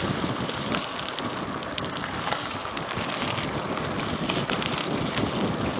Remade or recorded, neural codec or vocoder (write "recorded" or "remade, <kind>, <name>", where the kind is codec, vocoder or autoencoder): recorded